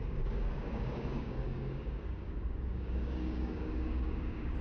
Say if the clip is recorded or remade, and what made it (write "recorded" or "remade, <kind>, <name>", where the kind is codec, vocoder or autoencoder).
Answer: remade, codec, DAC